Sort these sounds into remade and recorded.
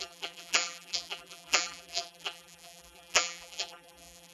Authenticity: remade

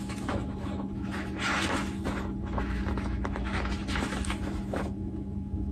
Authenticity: remade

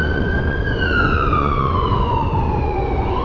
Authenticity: remade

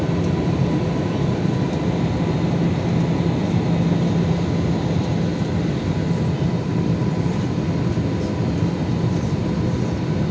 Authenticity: recorded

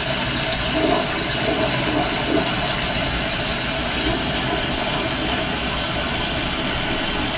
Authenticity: recorded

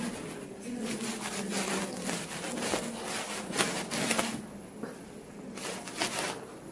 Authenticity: recorded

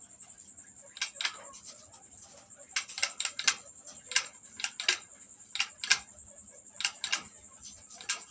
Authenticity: recorded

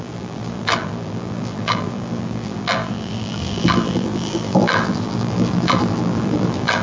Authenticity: remade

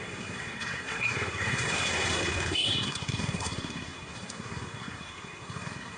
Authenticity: remade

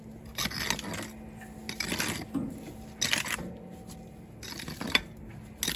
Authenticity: recorded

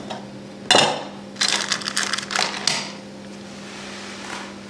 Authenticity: recorded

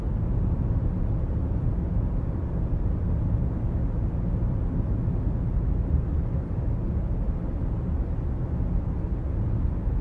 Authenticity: recorded